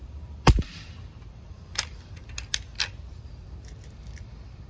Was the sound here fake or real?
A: fake